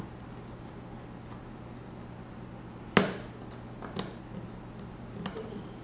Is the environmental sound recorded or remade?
recorded